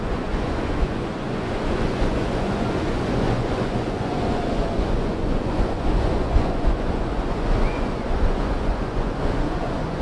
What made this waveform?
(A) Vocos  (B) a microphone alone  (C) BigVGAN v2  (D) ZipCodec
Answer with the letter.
A